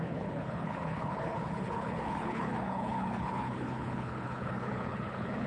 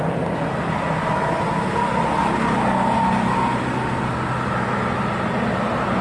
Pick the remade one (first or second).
first